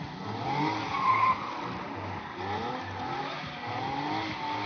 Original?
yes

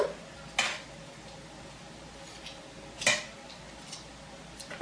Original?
yes